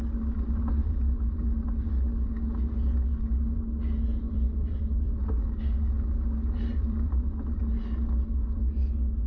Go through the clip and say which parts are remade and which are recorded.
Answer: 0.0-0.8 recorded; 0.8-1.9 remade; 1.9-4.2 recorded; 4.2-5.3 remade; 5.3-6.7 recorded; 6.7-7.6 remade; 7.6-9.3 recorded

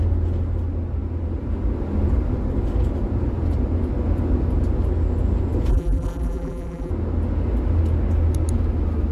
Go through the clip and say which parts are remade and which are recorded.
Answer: 0.0-5.7 recorded; 5.7-6.9 remade; 6.9-9.1 recorded

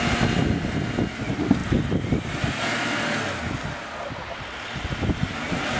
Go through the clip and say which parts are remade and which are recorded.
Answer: 0.0-5.8 recorded

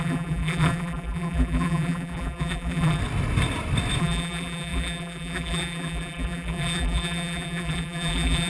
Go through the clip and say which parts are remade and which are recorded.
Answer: 0.0-3.0 remade; 3.0-4.0 recorded; 4.0-8.5 remade

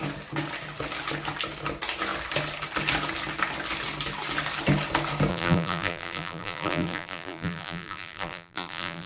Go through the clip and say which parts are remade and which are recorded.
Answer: 0.0-5.3 recorded; 5.3-9.1 remade

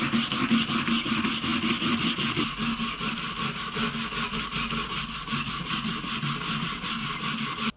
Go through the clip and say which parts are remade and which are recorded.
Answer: 0.0-7.8 recorded

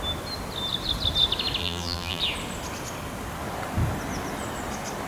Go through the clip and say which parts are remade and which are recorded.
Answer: 0.0-1.6 recorded; 1.6-2.2 remade; 2.2-5.1 recorded

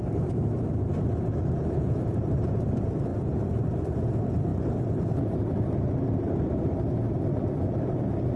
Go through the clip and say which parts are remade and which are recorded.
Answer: 0.0-8.4 remade